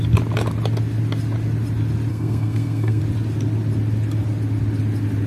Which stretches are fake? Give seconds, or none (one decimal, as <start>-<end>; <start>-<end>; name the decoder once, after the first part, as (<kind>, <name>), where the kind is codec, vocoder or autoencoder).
2.1-3.0 (codec, SNAC)